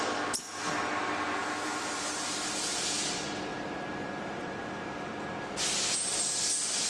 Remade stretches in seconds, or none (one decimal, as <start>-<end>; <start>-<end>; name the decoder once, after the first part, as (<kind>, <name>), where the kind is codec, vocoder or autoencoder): 1.4-2.3 (vocoder, BigVGAN v2); 3.5-5.1